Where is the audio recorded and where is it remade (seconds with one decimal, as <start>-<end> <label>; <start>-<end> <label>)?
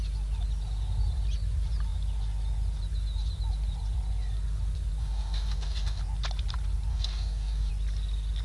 0.0-5.0 recorded; 5.0-6.0 remade; 6.0-6.9 recorded; 6.9-7.7 remade; 7.7-8.4 recorded